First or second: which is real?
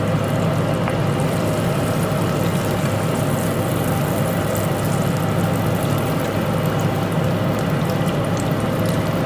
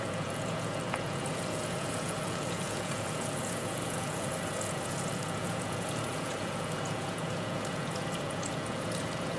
first